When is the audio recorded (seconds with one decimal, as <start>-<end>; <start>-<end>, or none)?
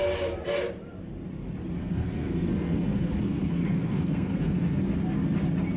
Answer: 0.0-1.8; 4.8-5.8